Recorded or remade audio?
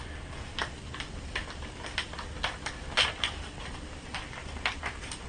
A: recorded